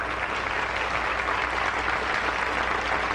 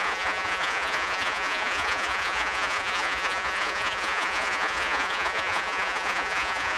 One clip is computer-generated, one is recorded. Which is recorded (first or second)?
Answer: first